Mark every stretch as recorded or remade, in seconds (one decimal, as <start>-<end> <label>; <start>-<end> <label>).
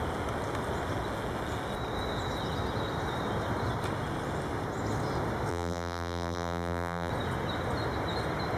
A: 0.0-5.5 recorded; 5.5-7.1 remade; 7.1-8.6 recorded